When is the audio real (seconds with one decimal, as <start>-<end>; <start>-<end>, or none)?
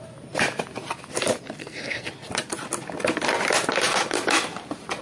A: 0.0-1.6; 2.1-5.0